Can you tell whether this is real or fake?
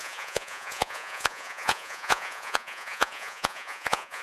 fake